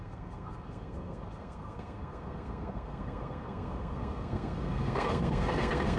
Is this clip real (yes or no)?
no